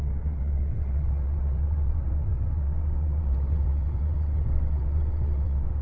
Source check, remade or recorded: remade